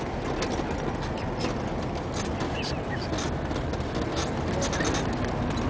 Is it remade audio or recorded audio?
recorded